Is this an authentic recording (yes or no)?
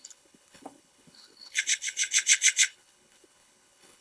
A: no